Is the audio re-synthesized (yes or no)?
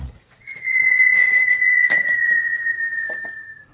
yes